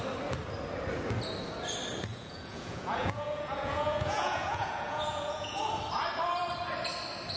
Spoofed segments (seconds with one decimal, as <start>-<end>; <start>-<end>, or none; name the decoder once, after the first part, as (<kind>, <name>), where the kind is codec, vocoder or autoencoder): 2.1-5.6 (vocoder, Vocos)